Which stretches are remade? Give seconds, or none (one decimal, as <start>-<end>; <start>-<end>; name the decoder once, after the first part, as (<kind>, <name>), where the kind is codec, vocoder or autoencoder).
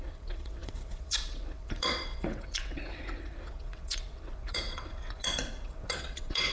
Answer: 0.0-6.5 (vocoder, WaveNeXt)